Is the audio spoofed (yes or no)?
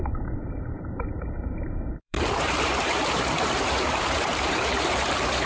yes